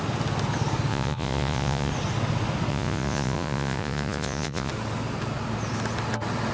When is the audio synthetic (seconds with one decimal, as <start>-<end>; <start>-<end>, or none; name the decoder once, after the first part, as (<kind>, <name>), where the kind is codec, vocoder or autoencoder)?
0.9-1.9 (vocoder, Vocos); 2.7-4.7